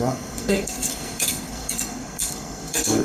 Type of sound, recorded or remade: remade